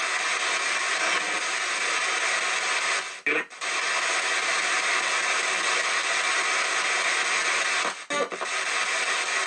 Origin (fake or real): real